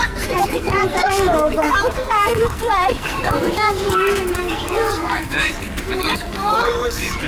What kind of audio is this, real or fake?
fake